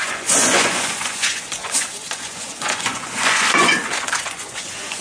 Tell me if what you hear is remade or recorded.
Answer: remade